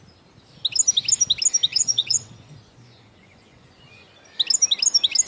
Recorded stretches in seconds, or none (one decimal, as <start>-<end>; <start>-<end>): 0.0-1.7; 4.1-5.3